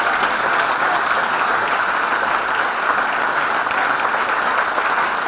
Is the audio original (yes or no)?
yes